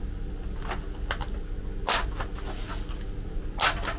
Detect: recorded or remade recorded